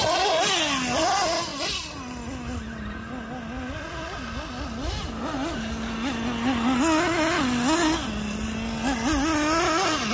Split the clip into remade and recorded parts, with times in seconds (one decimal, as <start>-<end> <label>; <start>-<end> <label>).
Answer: 0.0-10.1 recorded